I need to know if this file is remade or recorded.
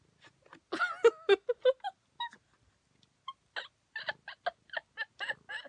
recorded